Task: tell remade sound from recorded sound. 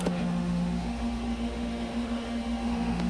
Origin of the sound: remade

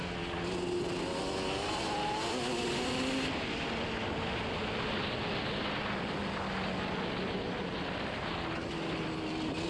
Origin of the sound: recorded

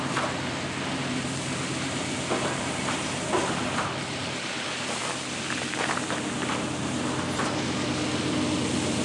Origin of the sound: recorded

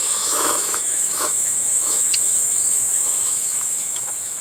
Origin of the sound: remade